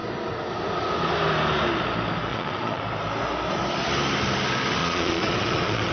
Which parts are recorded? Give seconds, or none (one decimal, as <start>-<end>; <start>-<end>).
0.0-2.3; 2.8-4.8